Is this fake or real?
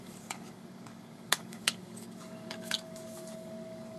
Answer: fake